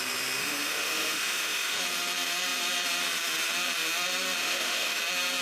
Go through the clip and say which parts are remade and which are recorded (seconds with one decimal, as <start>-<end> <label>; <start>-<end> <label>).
0.0-0.4 recorded; 0.4-1.8 remade; 1.8-4.4 recorded; 4.4-5.0 remade; 5.0-5.4 recorded